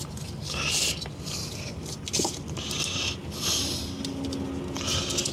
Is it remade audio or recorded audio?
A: recorded